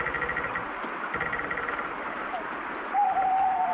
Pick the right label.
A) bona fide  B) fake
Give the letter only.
A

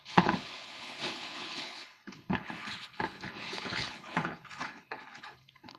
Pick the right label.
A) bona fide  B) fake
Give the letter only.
B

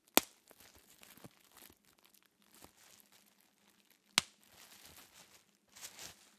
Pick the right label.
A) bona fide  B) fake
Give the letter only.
A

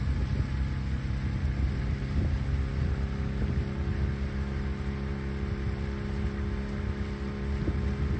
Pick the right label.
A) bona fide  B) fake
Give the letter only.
A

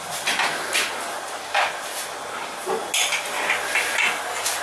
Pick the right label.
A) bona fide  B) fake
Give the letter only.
A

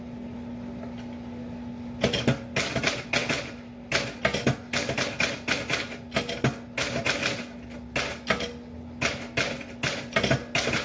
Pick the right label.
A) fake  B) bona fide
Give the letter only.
B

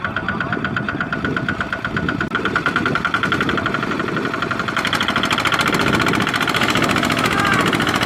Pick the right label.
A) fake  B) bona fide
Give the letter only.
B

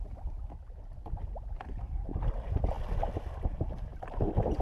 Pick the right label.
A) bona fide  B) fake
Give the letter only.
A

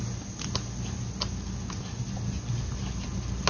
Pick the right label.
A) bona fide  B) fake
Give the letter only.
A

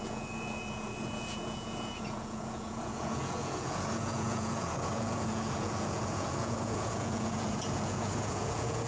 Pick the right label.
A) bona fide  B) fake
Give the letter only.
B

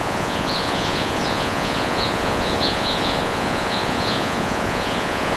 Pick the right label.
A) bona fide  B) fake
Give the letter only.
B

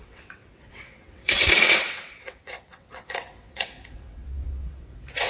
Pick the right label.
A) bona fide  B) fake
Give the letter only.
B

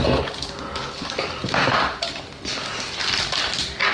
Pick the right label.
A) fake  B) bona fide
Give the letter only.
B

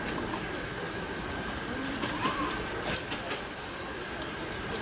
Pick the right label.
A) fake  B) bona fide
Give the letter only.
B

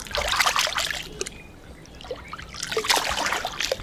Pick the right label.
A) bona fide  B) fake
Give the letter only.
A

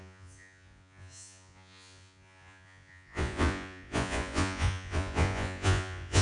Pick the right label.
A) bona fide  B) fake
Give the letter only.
B